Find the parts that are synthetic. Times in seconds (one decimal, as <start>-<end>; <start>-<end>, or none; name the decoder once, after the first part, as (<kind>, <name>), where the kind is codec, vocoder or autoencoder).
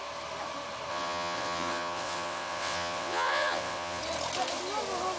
0.9-4.0 (vocoder, WaveNeXt)